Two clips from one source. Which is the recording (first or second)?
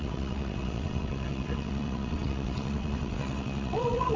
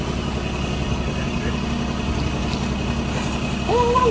second